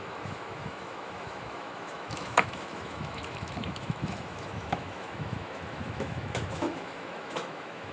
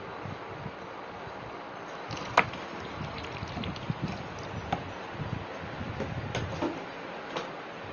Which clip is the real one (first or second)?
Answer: second